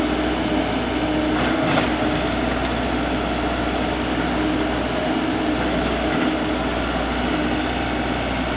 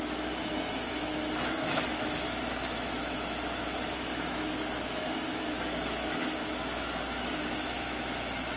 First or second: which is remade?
second